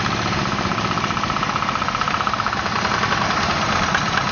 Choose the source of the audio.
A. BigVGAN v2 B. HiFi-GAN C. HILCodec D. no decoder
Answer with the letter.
D